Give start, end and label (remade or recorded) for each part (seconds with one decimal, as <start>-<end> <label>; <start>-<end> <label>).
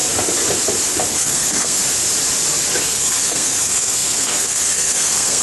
0.0-1.1 recorded; 1.1-1.8 remade; 1.8-2.8 recorded; 2.8-5.4 remade